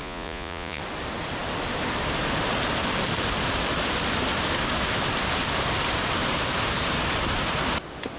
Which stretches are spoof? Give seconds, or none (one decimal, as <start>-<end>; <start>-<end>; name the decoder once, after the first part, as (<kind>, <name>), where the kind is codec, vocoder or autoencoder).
0.0-0.8 (vocoder, Vocos)